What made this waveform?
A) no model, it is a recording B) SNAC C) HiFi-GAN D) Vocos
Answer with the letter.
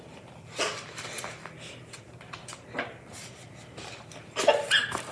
A